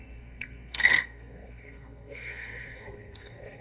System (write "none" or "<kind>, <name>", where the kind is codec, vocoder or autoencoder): codec, SNAC